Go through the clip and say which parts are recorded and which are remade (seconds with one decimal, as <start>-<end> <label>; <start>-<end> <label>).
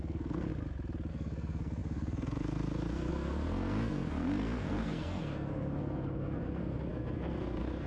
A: 0.0-0.5 remade; 0.5-1.1 recorded; 1.1-7.9 remade